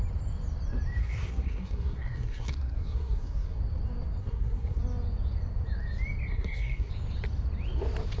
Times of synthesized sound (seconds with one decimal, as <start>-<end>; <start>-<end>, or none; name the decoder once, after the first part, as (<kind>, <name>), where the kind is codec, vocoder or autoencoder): 1.0-3.6 (codec, SNAC); 4.2-4.8; 6.3-6.9